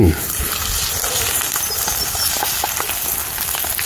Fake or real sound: real